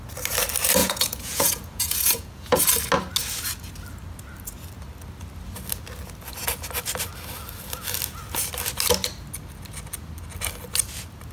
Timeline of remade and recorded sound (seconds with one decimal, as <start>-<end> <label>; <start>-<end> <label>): 0.0-0.8 recorded; 0.8-2.6 remade; 2.6-11.3 recorded